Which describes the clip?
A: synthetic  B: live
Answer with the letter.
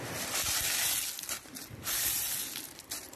B